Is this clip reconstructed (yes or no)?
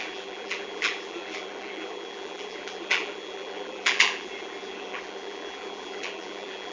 yes